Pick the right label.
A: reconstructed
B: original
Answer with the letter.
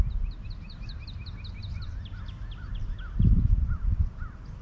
B